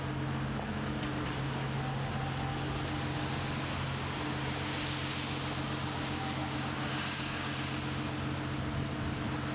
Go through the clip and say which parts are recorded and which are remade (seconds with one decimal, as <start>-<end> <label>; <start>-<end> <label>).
0.0-6.4 recorded; 6.4-7.5 remade; 7.5-9.5 recorded